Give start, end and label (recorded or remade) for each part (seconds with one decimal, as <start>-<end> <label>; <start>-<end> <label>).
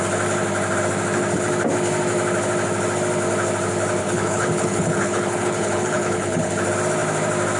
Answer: 0.0-4.0 recorded; 4.0-6.5 remade; 6.5-7.6 recorded